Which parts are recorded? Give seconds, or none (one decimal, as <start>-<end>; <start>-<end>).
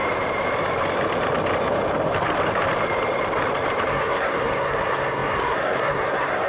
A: 0.0-3.9